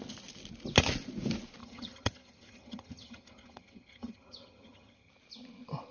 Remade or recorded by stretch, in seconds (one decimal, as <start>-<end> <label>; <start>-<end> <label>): 0.0-1.6 recorded; 1.6-5.1 remade; 5.1-5.9 recorded